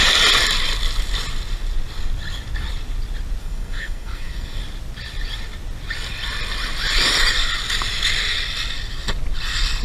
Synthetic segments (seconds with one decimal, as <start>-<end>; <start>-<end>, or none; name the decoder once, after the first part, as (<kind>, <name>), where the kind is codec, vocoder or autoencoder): 3.4-4.6 (codec, SNAC)